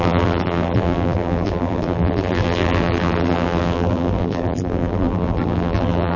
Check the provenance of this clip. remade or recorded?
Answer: remade